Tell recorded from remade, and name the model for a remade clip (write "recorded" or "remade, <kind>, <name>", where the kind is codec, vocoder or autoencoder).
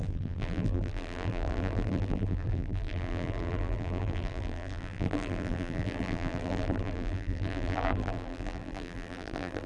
remade, vocoder, BigVGAN v2